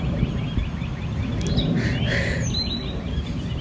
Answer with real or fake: real